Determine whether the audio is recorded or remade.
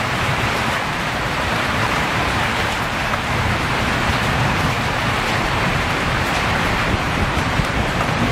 remade